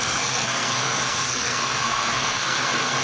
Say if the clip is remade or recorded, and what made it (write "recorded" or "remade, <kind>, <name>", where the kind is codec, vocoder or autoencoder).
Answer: remade, codec, SNAC